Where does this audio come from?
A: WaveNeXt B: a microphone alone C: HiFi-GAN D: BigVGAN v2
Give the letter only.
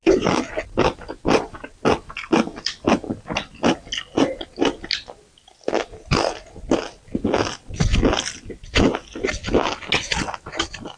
B